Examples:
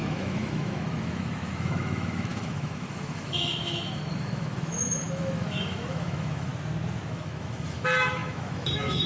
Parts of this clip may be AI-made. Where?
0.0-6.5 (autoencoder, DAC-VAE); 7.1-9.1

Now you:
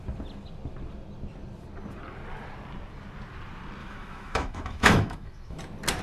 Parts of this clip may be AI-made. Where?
3.8-5.6 (autoencoder, DAC-VAE)

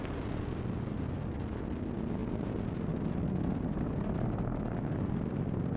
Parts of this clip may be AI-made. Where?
none

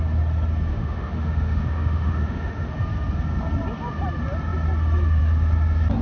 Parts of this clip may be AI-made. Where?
0.7-2.7 (autoencoder, DAC-VAE)

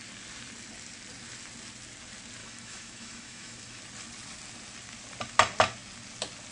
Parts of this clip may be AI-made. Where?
2.4-3.8 (autoencoder, DAC-VAE)

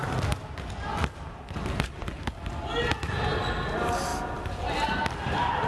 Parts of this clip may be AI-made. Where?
none

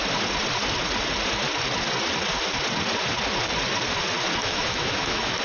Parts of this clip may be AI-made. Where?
4.4-5.4 (autoencoder, DAC-VAE)